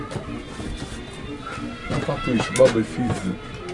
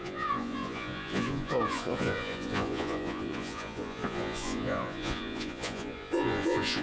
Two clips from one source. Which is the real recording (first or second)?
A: first